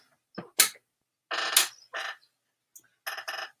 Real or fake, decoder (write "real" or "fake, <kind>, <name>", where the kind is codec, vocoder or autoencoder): real